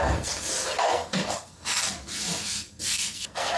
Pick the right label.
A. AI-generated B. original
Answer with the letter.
A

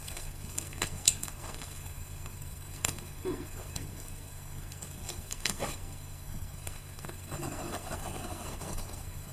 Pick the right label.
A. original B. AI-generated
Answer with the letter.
B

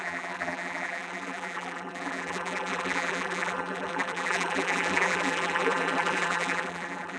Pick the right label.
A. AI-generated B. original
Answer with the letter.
A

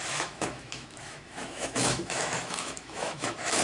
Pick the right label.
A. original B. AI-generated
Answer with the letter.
B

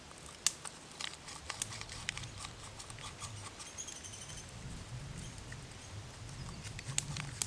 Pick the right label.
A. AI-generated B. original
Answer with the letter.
B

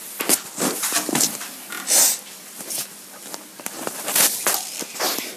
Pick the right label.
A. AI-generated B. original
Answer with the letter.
B